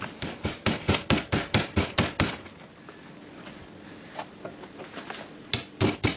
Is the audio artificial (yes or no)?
no